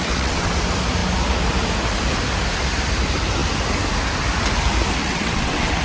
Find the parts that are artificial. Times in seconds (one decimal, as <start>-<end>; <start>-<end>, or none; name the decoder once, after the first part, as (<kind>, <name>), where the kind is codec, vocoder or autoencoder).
0.0-0.5 (vocoder, WaveNeXt); 5.0-5.8

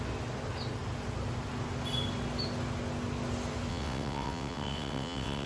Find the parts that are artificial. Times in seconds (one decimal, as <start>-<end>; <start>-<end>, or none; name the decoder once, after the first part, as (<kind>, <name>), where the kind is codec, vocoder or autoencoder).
3.7-5.5 (vocoder, WaveNeXt)